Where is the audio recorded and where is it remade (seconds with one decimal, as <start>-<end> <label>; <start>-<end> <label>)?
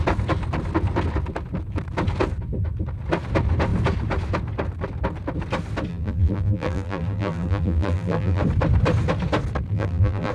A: 0.0-5.9 recorded; 5.9-8.4 remade; 8.4-9.7 recorded; 9.7-10.3 remade